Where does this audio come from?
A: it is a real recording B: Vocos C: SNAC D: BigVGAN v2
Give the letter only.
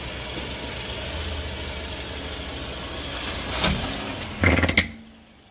A